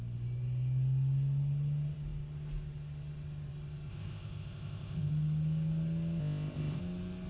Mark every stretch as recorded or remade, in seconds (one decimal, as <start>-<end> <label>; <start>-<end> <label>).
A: 0.0-3.9 recorded; 3.9-5.1 remade; 5.1-6.2 recorded; 6.2-6.8 remade; 6.8-7.3 recorded